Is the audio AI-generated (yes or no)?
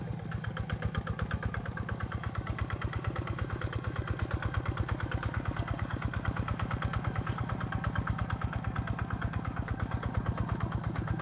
yes